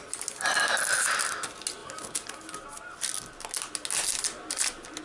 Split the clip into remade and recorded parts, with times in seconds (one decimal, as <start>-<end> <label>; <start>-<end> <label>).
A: 0.0-5.0 recorded